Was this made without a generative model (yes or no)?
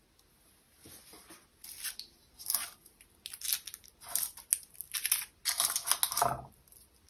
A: yes